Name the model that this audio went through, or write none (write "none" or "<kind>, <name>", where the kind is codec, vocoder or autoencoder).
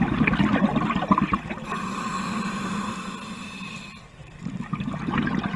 none